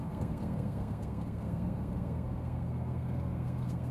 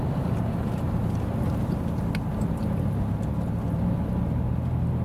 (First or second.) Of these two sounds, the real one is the second